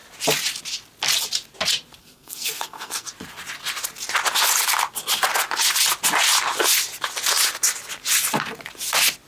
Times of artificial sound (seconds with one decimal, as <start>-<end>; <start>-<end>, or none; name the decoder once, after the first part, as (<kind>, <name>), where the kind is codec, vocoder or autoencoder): 2.0-3.1 (codec, SNAC)